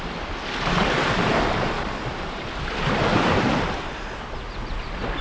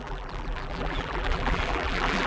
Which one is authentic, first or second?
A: first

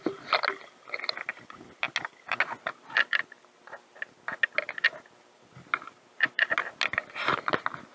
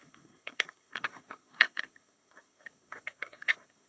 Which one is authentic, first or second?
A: first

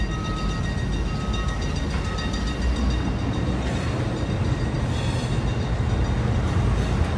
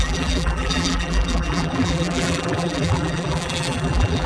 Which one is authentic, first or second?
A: first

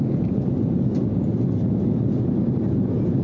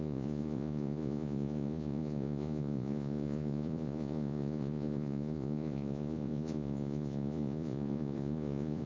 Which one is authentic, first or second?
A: first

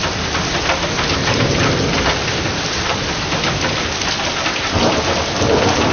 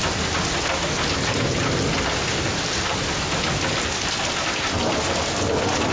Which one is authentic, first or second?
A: second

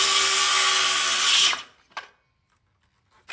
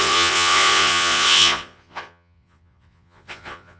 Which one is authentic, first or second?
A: first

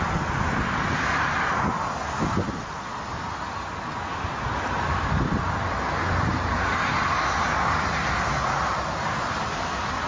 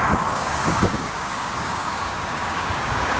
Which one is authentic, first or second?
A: first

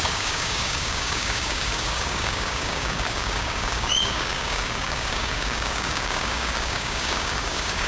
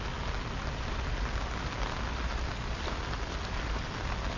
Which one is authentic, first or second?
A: second